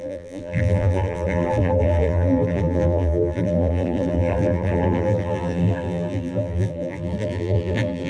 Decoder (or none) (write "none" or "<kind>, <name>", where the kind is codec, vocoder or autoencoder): vocoder, BigVGAN v2